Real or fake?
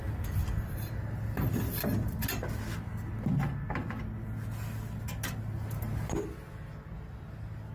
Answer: real